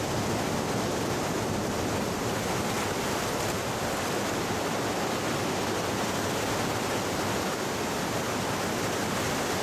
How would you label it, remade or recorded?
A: recorded